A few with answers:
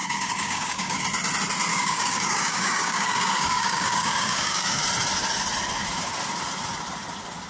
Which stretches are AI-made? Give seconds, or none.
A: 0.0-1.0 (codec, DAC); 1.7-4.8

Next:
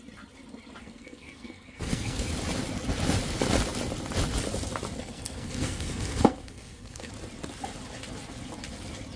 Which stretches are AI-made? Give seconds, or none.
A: 0.8-2.3 (codec, SNAC); 5.0-7.1

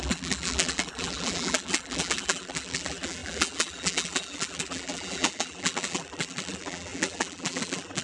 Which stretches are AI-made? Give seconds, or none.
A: 0.0-8.0 (vocoder, BigVGAN v2)

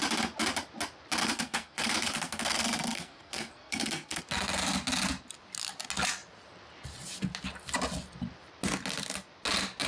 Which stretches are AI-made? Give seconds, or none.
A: 1.2-4.2 (codec, SNAC)

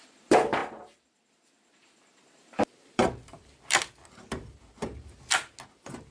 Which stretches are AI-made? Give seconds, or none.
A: 0.0-4.8 (vocoder, BigVGAN v2)

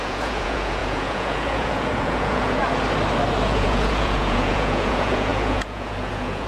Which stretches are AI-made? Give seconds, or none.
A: 0.0-2.6 (vocoder, Vocos); 3.4-6.5

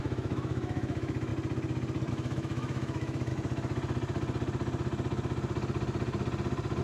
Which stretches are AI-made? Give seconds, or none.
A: 0.0-1.3 (autoencoder, DAC-VAE); 2.1-3.3

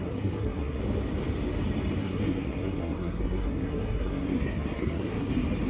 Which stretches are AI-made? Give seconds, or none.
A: 0.0-0.8 (codec, SNAC); 2.0-5.3